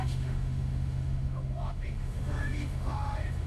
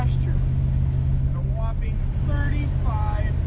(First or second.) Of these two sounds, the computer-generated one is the first